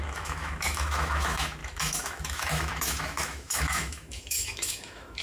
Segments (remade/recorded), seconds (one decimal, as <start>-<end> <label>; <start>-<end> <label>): 0.0-5.2 remade

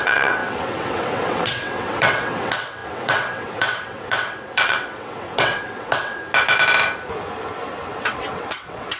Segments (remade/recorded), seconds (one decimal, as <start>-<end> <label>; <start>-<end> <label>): 0.0-6.2 remade; 6.2-8.0 recorded; 8.0-9.0 remade

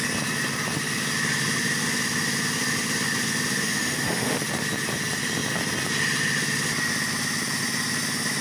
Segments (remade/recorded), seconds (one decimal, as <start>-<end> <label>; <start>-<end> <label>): 0.0-3.6 recorded; 3.6-4.4 remade; 4.4-8.4 recorded

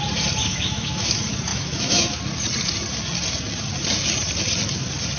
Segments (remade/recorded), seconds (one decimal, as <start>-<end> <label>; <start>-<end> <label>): 0.0-0.4 recorded; 0.4-1.1 remade; 1.1-1.5 recorded; 1.5-2.2 remade; 2.2-5.2 recorded

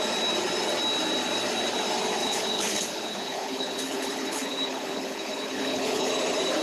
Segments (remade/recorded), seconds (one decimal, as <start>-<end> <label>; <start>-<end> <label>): 0.0-2.2 recorded; 2.2-6.1 remade; 6.1-6.6 recorded

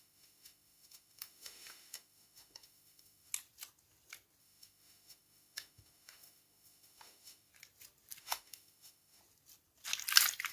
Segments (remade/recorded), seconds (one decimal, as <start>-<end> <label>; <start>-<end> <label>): 0.0-3.3 remade; 3.3-4.4 recorded; 4.4-7.5 remade; 7.5-8.2 recorded; 8.2-9.2 remade; 9.2-10.5 recorded

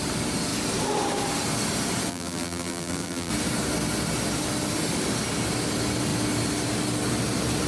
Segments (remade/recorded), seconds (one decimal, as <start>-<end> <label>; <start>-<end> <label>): 0.0-2.1 recorded; 2.1-3.3 remade; 3.3-7.7 recorded